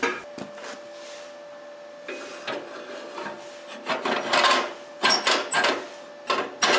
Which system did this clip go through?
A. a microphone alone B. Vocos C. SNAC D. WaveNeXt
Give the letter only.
A